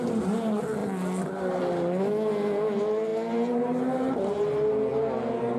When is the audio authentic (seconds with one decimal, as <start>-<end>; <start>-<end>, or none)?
0.0-5.6